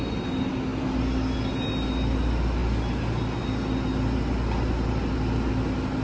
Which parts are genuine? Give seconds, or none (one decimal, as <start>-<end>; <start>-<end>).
0.0-6.0